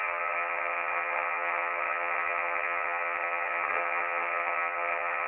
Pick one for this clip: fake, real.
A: fake